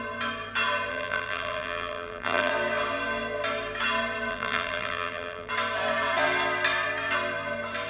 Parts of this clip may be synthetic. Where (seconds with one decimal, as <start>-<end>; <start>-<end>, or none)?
0.9-2.5; 4.3-5.5